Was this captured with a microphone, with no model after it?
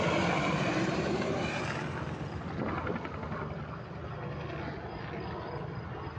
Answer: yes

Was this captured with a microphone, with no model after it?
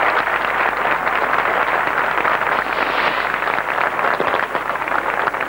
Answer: yes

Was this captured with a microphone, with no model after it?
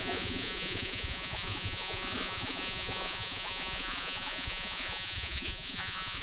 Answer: no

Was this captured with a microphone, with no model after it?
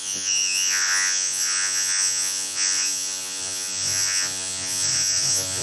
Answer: no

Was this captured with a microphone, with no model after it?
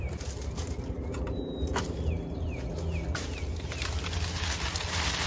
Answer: yes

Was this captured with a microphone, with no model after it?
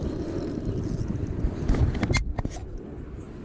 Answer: yes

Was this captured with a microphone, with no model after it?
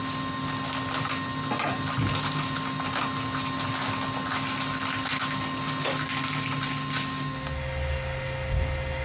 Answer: yes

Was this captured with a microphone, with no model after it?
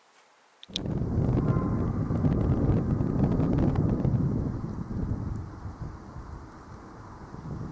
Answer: yes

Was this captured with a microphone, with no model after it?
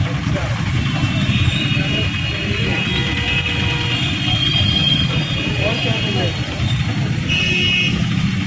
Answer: yes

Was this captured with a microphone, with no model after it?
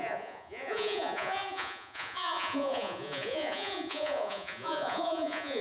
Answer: no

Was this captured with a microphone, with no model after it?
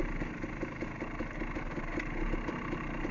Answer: yes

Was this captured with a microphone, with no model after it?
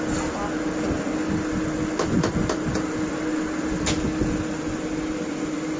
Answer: yes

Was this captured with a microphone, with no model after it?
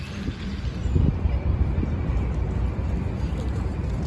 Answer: yes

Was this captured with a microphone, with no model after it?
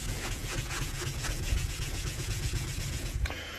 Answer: no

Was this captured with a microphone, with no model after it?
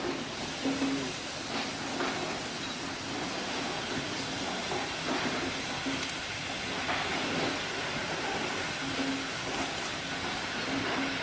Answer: yes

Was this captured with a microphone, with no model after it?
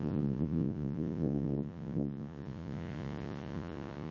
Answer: no